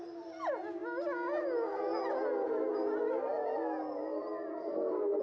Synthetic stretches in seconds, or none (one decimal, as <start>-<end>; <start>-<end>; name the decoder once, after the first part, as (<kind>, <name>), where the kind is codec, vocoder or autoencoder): 4.5-5.2 (codec, SNAC)

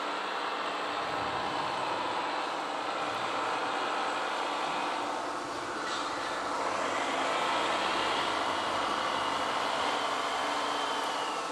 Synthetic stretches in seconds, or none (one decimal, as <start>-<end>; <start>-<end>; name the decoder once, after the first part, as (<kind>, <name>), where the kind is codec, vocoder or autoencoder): none

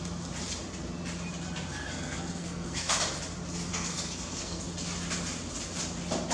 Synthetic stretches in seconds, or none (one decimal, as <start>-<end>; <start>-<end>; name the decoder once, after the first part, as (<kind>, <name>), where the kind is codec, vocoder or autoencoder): 1.8-3.0 (codec, SNAC); 3.7-4.6

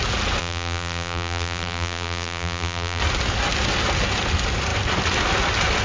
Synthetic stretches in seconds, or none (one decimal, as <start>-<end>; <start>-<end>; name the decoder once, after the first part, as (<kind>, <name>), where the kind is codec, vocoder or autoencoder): 0.4-3.0 (vocoder, BigVGAN v2)

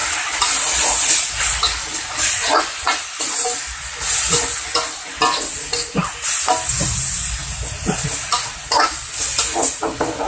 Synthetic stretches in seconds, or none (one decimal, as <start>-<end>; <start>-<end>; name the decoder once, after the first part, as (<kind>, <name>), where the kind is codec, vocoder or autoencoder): 2.4-3.0 (vocoder, Vocos)

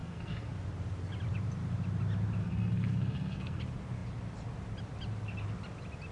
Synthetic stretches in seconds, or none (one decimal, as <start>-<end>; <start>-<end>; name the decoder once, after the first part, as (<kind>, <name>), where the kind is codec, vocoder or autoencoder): 0.0-0.5 (codec, SNAC); 2.4-3.6

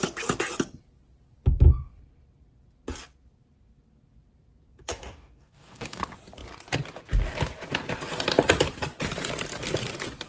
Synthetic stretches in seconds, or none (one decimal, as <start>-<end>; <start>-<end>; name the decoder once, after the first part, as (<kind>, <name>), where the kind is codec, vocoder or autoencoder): 4.9-6.0 (codec, DAC)